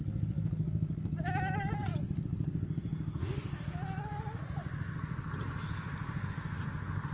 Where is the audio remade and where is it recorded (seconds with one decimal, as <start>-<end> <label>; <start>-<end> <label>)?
0.0-7.1 recorded